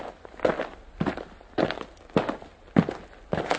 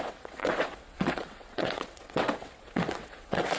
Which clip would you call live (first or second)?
first